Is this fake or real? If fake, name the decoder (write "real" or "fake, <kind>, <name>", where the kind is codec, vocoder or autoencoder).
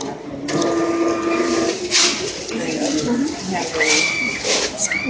real